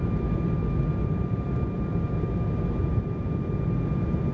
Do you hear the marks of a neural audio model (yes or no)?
no